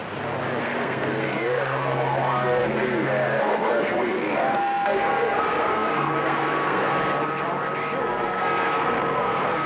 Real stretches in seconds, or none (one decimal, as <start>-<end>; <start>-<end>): 0.0-0.6; 6.9-8.0